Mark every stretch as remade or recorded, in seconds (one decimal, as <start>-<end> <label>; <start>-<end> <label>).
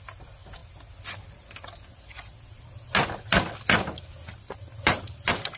0.0-5.6 recorded